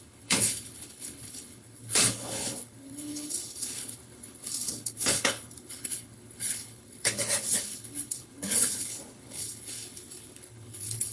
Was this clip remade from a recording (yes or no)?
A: yes